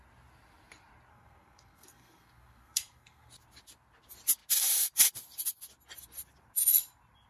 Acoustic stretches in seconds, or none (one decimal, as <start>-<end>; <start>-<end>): 0.0-1.1; 3.3-7.3